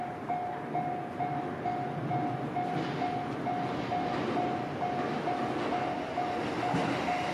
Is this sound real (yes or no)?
yes